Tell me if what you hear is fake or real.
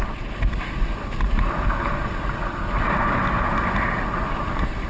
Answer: real